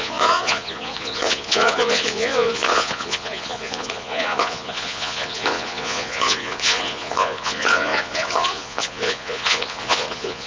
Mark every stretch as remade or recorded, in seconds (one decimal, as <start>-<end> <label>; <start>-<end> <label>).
0.0-10.5 remade